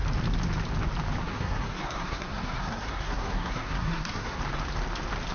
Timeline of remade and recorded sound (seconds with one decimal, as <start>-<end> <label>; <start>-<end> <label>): 0.0-1.2 recorded; 1.2-4.4 remade; 4.4-5.3 recorded